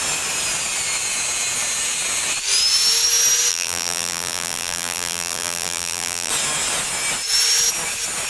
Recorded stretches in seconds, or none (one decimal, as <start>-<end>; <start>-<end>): 0.0-3.5; 6.3-8.3